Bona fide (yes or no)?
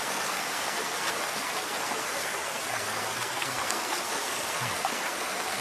no